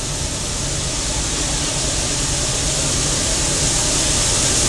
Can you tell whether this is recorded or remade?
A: recorded